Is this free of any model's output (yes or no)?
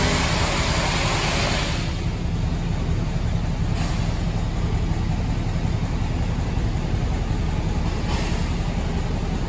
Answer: yes